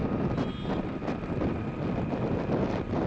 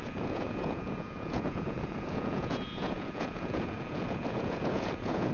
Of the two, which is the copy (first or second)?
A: second